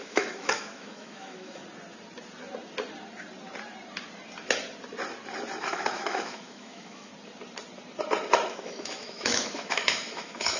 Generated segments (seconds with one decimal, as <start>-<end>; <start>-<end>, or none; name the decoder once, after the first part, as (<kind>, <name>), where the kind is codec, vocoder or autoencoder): 0.0-1.6 (autoencoder, DAC-VAE); 5.6-7.1; 8.5-10.6